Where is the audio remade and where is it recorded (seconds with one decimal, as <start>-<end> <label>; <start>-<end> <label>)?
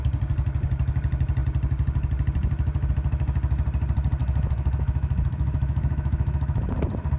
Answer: 0.0-4.2 recorded; 4.2-6.6 remade; 6.6-7.2 recorded